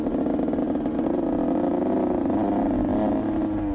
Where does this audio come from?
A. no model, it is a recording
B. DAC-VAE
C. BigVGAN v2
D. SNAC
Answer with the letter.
A